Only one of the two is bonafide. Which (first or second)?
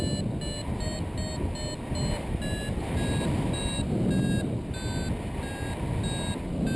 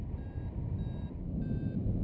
first